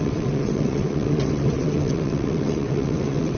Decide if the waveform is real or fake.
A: fake